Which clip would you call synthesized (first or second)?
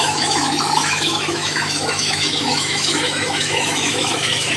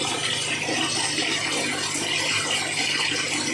first